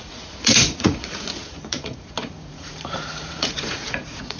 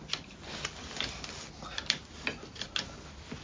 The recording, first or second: second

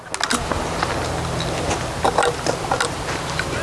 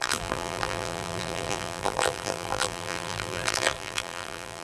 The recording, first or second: first